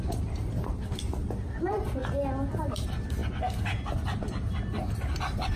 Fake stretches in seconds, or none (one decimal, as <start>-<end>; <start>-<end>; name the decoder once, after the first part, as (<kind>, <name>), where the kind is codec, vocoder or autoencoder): 0.0-2.0 (vocoder, BigVGAN v2); 2.6-3.2; 3.9-5.6

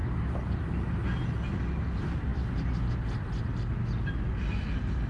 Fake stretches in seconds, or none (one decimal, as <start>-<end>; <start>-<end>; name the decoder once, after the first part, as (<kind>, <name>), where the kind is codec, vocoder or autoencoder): none